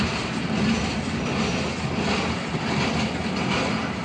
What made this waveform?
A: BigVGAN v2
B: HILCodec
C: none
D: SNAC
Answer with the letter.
A